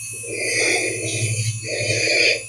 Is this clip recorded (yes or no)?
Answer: yes